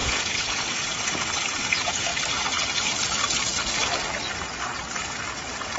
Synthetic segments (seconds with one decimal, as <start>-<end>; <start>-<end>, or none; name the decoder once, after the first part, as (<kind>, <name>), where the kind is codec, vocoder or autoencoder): 0.0-2.1 (vocoder, Vocos)